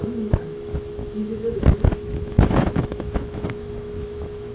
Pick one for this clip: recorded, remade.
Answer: remade